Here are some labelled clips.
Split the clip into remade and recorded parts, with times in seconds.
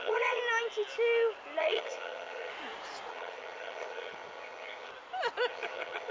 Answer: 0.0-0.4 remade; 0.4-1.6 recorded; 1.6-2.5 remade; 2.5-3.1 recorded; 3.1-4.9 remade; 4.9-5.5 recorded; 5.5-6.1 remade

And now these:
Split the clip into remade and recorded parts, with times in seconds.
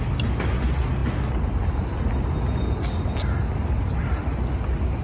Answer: 0.0-5.0 recorded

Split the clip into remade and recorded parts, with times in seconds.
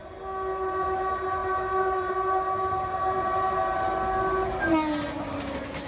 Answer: 0.0-5.9 recorded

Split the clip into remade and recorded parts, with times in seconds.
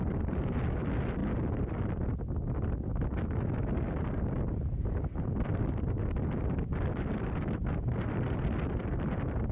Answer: 0.0-1.2 remade; 1.2-5.5 recorded; 5.5-9.5 remade